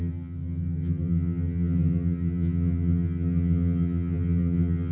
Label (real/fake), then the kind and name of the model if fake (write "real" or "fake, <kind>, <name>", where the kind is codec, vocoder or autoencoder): fake, vocoder, HiFi-GAN